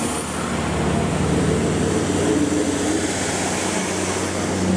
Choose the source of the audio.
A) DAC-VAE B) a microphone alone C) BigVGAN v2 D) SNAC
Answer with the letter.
B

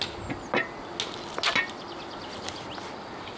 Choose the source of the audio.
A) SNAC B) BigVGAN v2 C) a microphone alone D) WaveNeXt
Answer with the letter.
C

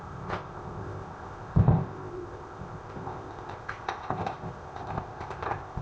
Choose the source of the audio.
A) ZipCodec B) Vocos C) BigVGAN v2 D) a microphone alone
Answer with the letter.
A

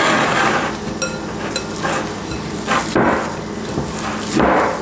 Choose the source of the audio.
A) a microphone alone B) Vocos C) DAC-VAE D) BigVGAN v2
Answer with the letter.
A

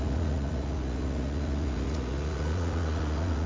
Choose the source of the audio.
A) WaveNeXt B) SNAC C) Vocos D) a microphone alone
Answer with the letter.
C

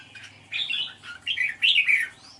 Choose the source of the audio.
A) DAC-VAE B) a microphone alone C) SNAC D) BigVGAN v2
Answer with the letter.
B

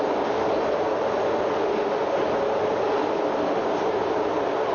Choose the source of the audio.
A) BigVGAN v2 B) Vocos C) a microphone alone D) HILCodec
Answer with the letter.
C